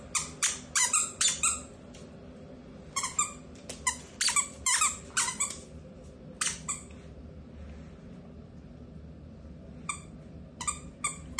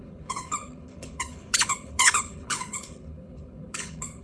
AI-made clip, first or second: second